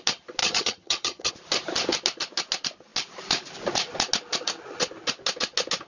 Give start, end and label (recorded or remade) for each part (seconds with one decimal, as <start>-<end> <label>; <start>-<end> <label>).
0.0-0.4 recorded; 0.4-1.3 remade; 1.3-5.9 recorded